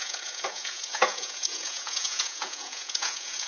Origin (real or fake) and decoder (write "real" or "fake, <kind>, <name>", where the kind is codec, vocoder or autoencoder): fake, vocoder, Vocos